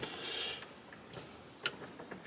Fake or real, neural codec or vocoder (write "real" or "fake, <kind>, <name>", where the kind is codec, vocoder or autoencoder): real